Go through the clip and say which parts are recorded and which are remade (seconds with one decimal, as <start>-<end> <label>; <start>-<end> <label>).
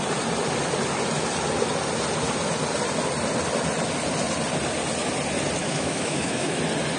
0.0-5.6 recorded; 5.6-6.6 remade; 6.6-7.0 recorded